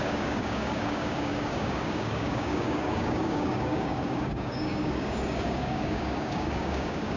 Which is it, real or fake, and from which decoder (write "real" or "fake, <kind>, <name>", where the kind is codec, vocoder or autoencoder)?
fake, codec, DAC